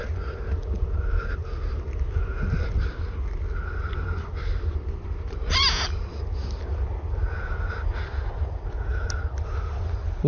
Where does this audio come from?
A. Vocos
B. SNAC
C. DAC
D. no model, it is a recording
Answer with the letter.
D